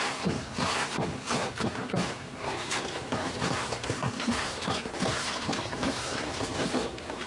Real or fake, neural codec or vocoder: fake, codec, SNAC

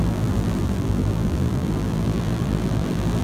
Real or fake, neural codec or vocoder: fake, vocoder, BigVGAN v2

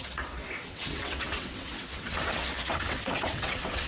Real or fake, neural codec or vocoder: fake, vocoder, WaveNeXt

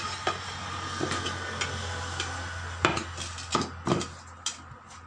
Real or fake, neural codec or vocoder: real